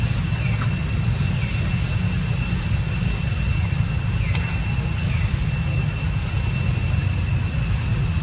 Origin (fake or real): real